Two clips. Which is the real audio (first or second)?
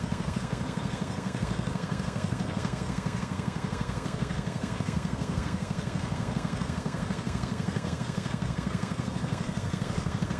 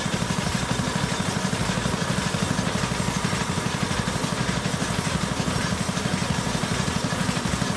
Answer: second